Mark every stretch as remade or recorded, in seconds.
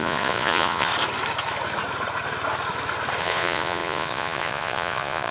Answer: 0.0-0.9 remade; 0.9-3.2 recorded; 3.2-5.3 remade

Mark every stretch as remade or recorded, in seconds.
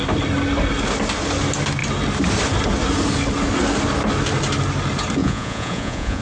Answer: 0.0-5.2 recorded; 5.2-6.2 remade